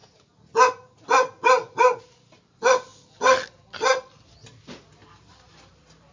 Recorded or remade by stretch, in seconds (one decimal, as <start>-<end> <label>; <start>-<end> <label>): 0.0-2.0 recorded; 2.0-2.9 remade; 2.9-5.3 recorded; 5.3-6.1 remade